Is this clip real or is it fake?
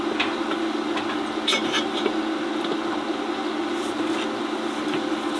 real